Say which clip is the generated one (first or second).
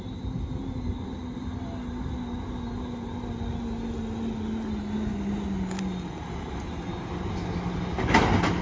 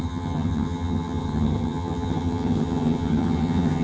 second